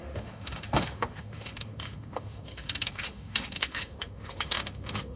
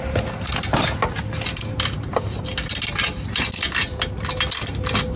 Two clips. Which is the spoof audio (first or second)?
first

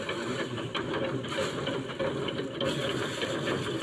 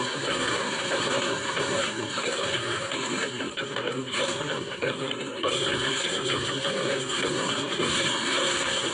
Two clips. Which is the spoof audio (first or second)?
second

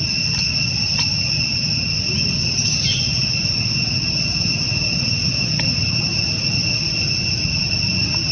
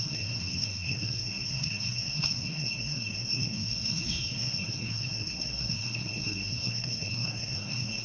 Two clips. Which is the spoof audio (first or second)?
second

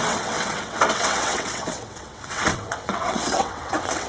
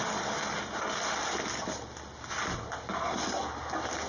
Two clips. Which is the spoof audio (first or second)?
first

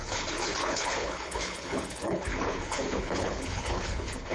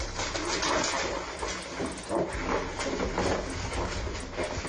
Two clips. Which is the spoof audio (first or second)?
first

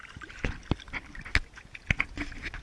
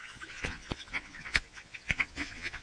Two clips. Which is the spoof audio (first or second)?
second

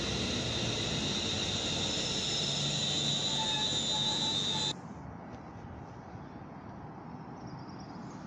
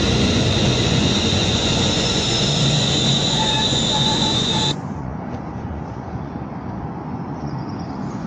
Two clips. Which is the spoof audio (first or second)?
second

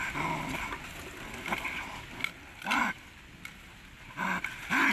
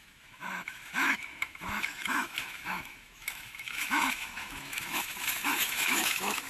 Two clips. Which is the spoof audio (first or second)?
second